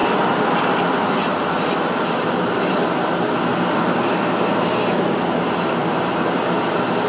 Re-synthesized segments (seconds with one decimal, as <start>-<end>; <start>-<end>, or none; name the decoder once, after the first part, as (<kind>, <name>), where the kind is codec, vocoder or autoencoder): none